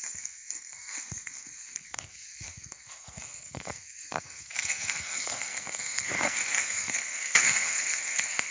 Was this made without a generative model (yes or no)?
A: no